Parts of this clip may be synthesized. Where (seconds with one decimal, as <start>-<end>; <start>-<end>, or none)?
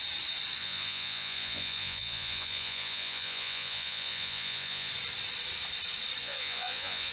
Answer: 0.6-4.9; 6.2-7.1